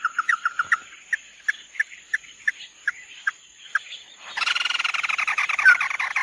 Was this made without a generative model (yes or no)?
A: yes